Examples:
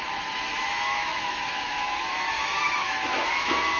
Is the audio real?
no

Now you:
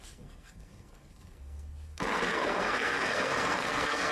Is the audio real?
no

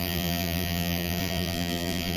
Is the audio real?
no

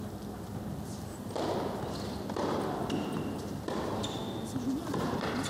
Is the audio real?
yes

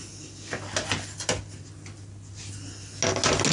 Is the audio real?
yes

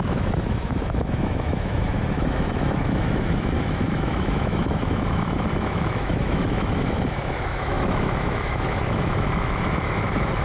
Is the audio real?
no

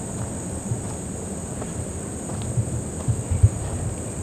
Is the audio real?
yes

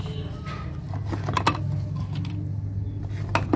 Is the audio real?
yes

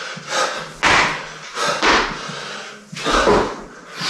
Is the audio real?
yes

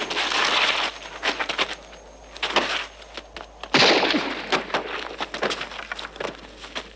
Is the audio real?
yes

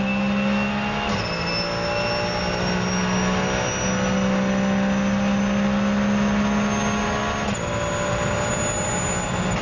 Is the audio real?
yes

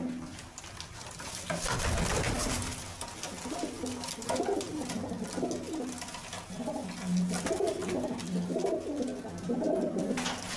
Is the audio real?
yes